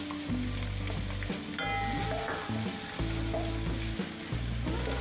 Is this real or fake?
real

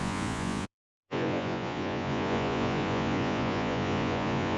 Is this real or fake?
fake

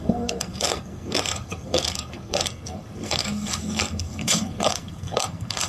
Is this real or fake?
fake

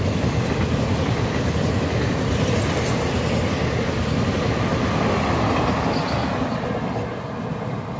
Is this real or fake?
real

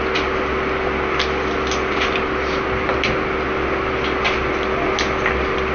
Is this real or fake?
real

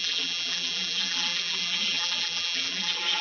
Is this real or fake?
fake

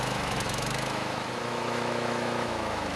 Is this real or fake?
fake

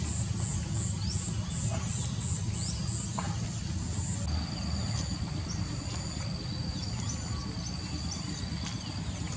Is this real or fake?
real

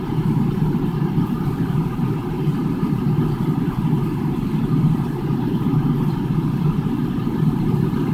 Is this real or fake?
fake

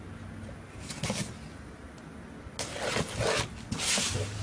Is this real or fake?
real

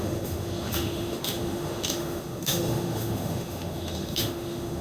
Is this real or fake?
fake